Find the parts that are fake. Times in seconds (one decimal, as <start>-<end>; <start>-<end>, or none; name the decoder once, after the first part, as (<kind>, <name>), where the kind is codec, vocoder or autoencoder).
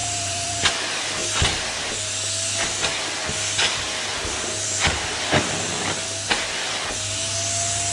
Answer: 0.0-0.7 (vocoder, BigVGAN v2); 4.5-5.5